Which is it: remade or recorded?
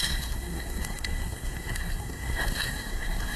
remade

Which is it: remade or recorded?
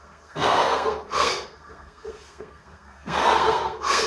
remade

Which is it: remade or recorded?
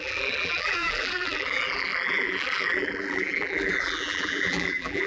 remade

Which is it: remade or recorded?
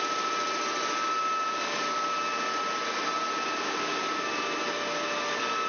recorded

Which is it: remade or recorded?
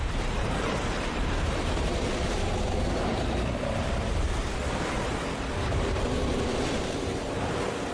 remade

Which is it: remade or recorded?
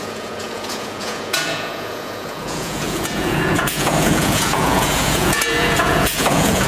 remade